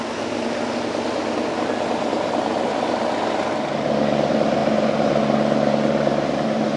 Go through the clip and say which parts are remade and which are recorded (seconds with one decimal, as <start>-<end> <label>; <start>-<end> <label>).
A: 0.0-6.8 recorded